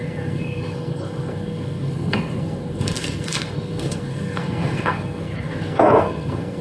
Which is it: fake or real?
fake